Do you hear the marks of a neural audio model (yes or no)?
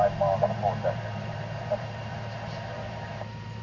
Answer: yes